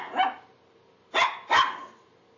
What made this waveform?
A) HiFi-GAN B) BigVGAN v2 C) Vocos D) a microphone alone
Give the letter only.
D